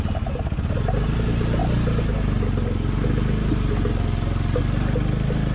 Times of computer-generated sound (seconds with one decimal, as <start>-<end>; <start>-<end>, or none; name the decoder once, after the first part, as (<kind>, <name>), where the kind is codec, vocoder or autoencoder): none